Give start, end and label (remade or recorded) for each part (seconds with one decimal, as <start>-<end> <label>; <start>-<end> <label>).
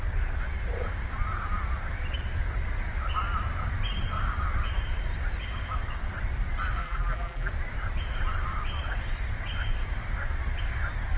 0.0-6.8 recorded; 6.8-7.5 remade; 7.5-11.2 recorded